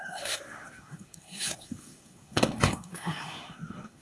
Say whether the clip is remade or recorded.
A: remade